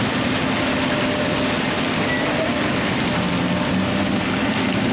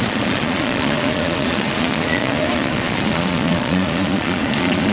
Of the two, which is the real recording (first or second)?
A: first